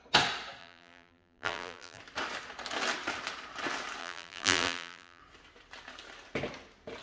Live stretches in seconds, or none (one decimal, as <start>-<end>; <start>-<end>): 0.0-0.6; 2.0-4.0; 5.2-7.0